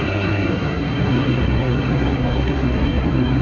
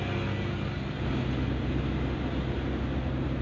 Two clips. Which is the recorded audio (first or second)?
second